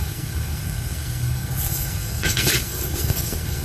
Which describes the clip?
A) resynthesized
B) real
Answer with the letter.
A